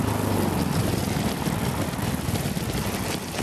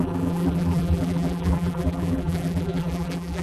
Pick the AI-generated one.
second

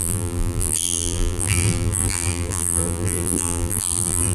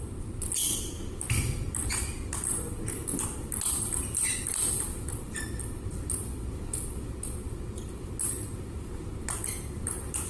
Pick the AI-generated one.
first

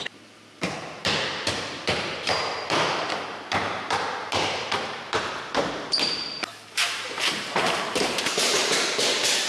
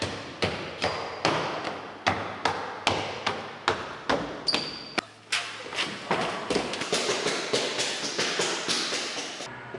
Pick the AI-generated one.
first